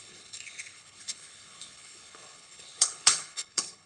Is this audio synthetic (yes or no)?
yes